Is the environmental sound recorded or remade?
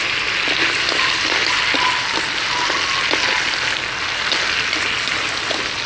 recorded